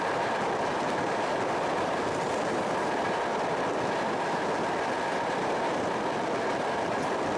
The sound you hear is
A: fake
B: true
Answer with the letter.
B